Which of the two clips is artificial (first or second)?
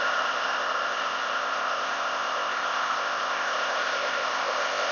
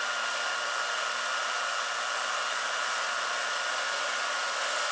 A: first